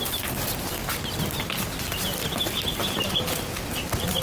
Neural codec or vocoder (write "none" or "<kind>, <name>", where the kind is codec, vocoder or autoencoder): none